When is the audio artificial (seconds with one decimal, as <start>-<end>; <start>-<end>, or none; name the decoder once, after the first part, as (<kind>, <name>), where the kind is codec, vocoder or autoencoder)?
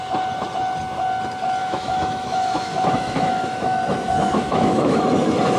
1.6-5.0 (autoencoder, DAC-VAE)